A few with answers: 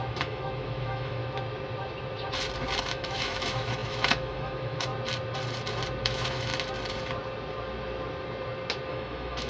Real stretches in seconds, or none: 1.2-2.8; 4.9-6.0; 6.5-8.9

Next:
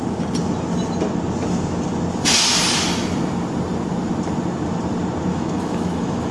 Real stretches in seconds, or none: 0.0-5.3